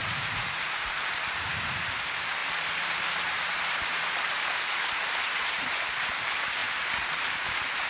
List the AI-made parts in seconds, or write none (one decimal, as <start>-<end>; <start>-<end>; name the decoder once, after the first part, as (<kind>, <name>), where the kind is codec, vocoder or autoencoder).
0.0-1.9 (vocoder, BigVGAN v2); 2.4-6.1; 6.6-7.9